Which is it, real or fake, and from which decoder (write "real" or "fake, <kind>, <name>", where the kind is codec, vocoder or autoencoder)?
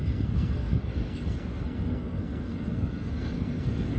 fake, codec, SNAC